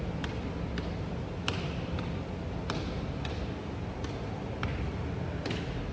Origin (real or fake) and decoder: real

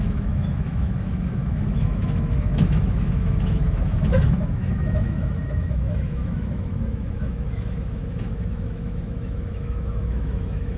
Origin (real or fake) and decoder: fake, autoencoder, DAC-VAE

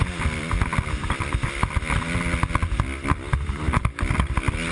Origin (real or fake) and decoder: real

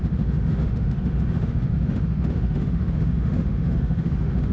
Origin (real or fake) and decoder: fake, autoencoder, DAC-VAE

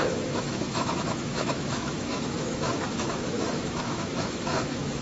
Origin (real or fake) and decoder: fake, autoencoder, DAC-VAE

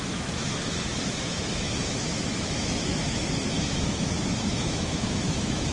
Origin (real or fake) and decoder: fake, autoencoder, DAC-VAE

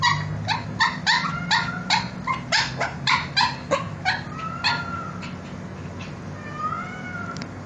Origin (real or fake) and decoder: real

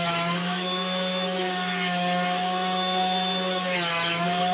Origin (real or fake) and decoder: fake, autoencoder, DAC-VAE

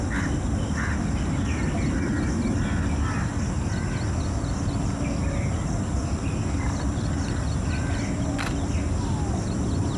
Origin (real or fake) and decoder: real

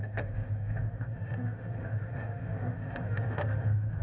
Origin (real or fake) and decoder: fake, autoencoder, DAC-VAE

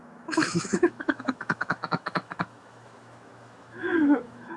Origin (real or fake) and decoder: fake, autoencoder, DAC-VAE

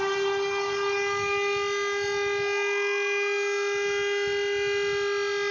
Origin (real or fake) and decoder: real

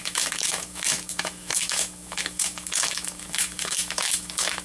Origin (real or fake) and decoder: fake, autoencoder, DAC-VAE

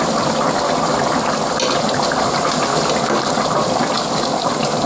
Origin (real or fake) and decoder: real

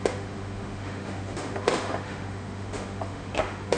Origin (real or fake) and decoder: fake, autoencoder, DAC-VAE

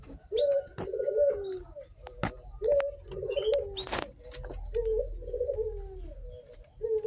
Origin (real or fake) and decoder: real